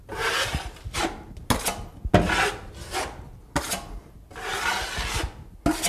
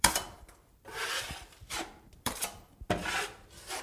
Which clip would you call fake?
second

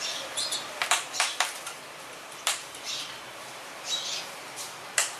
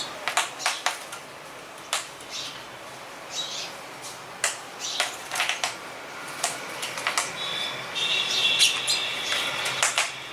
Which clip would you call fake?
first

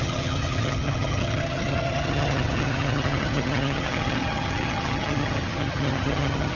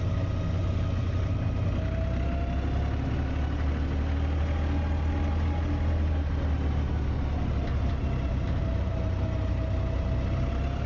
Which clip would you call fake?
first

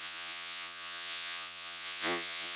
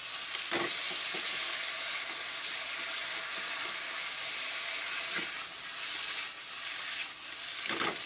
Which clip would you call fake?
first